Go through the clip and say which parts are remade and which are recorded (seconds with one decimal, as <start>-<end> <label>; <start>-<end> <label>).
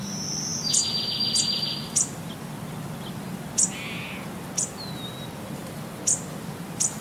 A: 0.0-7.0 recorded